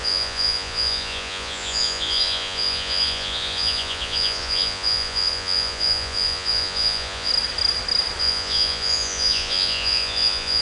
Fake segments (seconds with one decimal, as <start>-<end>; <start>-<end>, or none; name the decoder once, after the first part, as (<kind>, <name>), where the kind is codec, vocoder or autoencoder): 0.0-7.3 (vocoder, Vocos); 8.2-10.6